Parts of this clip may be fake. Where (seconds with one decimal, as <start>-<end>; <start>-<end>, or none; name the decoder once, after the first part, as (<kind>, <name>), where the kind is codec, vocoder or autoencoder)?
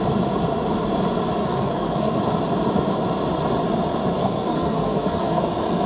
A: 1.4-2.2 (codec, SNAC); 4.2-5.4